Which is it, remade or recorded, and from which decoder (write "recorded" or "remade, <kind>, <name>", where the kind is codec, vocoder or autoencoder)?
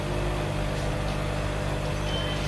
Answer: recorded